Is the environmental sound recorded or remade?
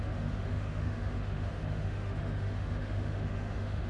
remade